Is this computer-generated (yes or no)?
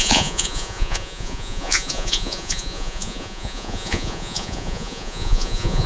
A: yes